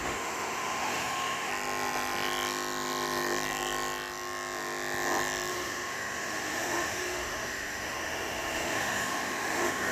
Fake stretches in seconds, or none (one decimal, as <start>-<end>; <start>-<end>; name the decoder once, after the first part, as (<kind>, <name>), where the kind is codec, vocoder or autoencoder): 0.0-1.5 (autoencoder, DAC-VAE); 5.5-9.9